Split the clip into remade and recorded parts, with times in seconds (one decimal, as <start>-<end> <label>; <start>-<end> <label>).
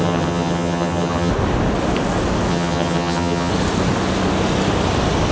0.0-1.3 remade; 1.3-2.5 recorded; 2.5-3.5 remade; 3.5-5.3 recorded